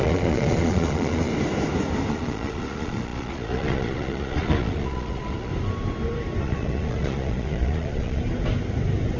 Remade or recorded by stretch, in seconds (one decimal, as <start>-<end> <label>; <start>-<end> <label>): 0.0-1.3 remade; 1.3-2.1 recorded; 2.1-5.5 remade; 5.5-6.4 recorded; 6.4-8.2 remade; 8.2-9.2 recorded